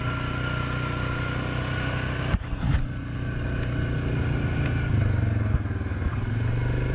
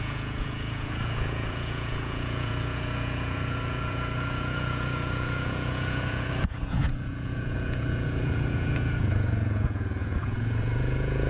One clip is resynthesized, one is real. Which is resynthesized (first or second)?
second